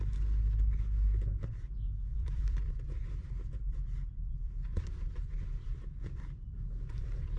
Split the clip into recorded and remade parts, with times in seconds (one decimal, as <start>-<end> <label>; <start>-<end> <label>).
0.0-2.1 recorded; 2.1-2.7 remade; 2.7-3.2 recorded; 3.2-7.4 remade